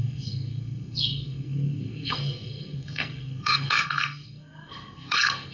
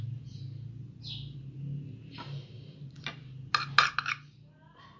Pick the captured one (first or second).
second